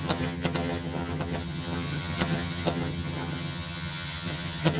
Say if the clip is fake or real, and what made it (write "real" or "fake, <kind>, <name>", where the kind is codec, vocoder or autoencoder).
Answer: fake, vocoder, HiFi-GAN